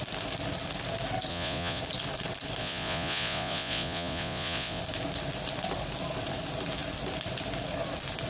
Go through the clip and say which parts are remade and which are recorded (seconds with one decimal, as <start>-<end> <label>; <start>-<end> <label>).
0.0-1.3 recorded; 1.3-1.8 remade; 1.8-2.6 recorded; 2.6-4.8 remade; 4.8-8.3 recorded